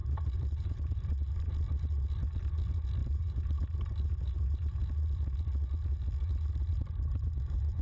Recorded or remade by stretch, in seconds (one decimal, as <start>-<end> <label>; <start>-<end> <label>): 0.0-1.5 remade; 1.5-3.0 recorded; 3.0-4.9 remade; 4.9-6.7 recorded; 6.7-7.8 remade